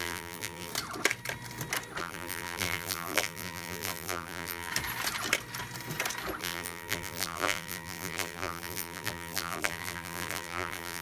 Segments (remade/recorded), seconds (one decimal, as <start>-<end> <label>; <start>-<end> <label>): 0.0-0.7 remade; 0.7-2.0 recorded; 2.0-4.7 remade; 4.7-6.4 recorded; 6.4-11.0 remade